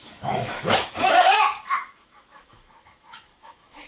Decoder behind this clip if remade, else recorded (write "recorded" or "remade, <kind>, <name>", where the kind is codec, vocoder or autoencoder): remade, autoencoder, DAC-VAE